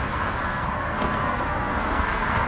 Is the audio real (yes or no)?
no